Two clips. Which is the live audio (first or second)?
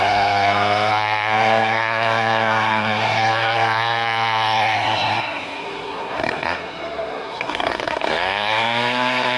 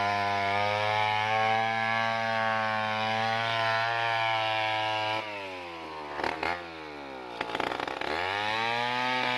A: second